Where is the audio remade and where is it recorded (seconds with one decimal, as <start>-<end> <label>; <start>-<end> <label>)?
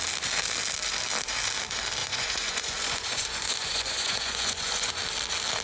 0.0-2.0 recorded; 2.0-4.9 remade; 4.9-5.6 recorded